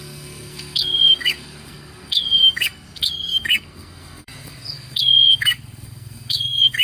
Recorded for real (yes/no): no